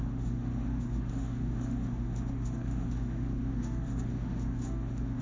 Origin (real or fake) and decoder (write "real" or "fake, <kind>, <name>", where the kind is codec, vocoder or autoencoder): fake, autoencoder, DAC-VAE